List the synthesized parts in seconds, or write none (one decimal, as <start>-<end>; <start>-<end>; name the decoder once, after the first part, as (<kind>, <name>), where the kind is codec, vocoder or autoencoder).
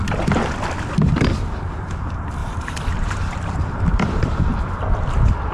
2.4-4.6 (vocoder, BigVGAN v2)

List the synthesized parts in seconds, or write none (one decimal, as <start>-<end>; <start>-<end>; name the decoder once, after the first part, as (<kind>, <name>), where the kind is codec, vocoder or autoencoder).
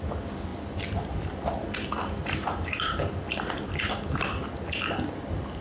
0.5-3.9 (vocoder, BigVGAN v2)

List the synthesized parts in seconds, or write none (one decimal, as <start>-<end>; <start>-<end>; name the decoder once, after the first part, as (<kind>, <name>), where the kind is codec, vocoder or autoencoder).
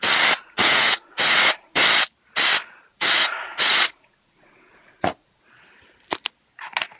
0.4-1.8 (vocoder, Vocos); 2.9-5.4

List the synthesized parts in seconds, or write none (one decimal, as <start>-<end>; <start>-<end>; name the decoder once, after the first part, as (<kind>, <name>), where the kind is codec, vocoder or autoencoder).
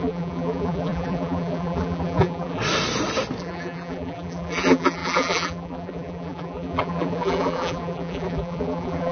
0.0-2.6 (vocoder, BigVGAN v2); 3.4-9.1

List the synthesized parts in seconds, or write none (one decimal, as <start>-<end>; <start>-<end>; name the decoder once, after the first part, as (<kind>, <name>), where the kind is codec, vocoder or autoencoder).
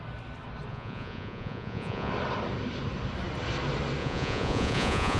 0.7-2.1 (vocoder, Vocos); 4.0-5.2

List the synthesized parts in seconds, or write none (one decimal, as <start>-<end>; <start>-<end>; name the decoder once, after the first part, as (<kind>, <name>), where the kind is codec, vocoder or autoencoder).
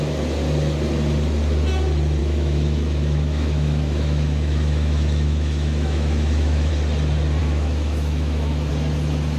2.2-6.7 (autoencoder, DAC-VAE); 7.4-8.7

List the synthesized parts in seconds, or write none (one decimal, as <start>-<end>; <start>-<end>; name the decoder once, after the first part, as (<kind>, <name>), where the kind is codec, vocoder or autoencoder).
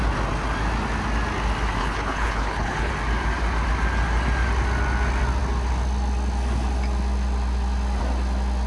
1.8-2.9 (codec, HILCodec)